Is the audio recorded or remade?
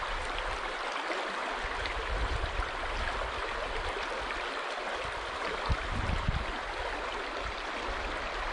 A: recorded